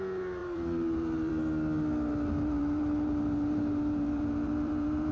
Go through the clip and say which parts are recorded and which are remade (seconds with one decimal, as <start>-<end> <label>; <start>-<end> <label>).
0.0-0.4 recorded; 0.4-1.3 remade; 1.3-2.6 recorded; 2.6-5.1 remade